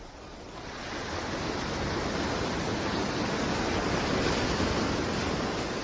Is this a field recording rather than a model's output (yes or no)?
yes